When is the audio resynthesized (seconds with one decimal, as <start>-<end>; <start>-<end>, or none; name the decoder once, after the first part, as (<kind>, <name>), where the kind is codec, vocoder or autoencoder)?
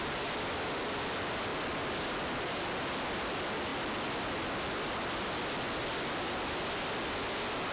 none